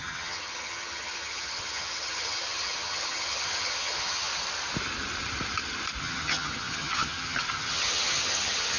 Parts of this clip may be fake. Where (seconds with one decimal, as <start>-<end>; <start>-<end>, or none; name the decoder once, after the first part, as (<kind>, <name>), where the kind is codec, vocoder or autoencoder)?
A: 0.0-4.3 (vocoder, HiFi-GAN); 6.0-8.8